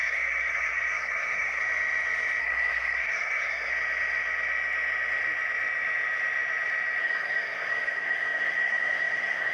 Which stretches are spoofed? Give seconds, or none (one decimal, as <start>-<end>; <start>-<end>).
0.0-1.6; 2.4-3.7; 7.0-9.5